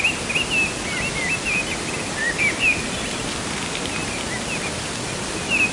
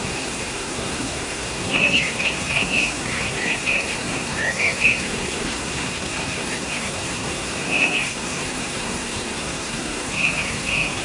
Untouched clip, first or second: first